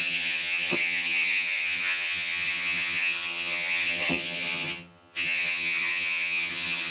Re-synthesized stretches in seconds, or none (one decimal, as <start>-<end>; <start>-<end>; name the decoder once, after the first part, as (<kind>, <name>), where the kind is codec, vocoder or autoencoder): 0.0-6.9 (vocoder, HiFi-GAN)